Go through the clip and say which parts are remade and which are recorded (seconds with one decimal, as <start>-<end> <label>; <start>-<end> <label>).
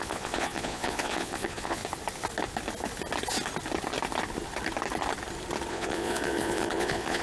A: 0.0-1.8 remade; 1.8-5.7 recorded; 5.7-7.2 remade